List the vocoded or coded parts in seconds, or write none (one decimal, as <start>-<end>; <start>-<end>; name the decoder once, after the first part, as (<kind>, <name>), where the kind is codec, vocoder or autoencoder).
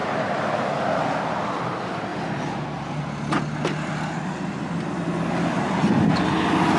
none